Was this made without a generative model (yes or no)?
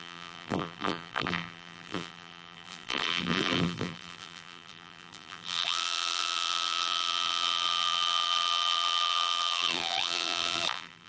no